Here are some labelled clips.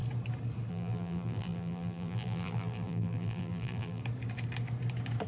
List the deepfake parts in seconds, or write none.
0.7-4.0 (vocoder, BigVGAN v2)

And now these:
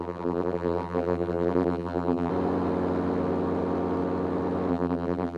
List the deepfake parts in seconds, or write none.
0.0-2.3 (vocoder, BigVGAN v2); 4.7-5.4

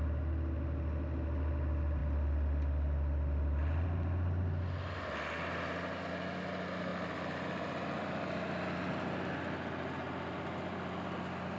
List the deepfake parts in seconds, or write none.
none

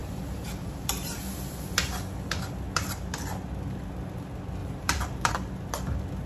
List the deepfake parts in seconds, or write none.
0.0-1.5 (vocoder, BigVGAN v2); 4.6-5.3